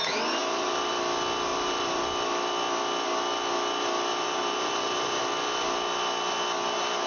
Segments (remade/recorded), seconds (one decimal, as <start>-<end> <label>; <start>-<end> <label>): 0.0-0.4 recorded; 0.4-0.9 remade; 0.9-1.5 recorded; 1.5-2.0 remade; 2.0-4.1 recorded; 4.1-5.2 remade; 5.2-7.1 recorded